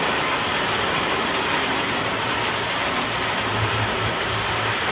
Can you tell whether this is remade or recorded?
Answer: recorded